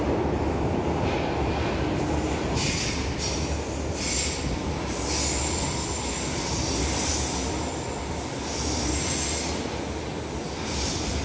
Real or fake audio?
real